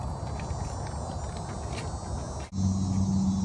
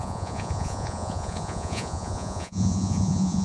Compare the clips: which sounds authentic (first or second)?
first